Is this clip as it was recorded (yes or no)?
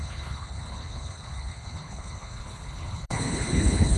no